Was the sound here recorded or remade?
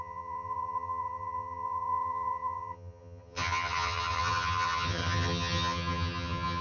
remade